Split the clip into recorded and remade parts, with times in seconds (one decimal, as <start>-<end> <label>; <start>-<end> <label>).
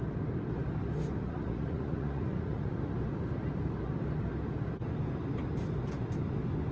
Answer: 0.0-1.2 recorded; 1.2-2.8 remade; 2.8-6.7 recorded